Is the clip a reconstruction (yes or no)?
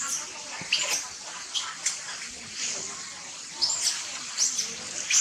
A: no